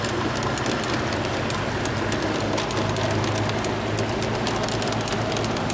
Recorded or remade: recorded